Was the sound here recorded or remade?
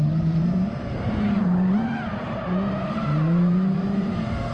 remade